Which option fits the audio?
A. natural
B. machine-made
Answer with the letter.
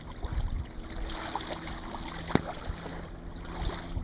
A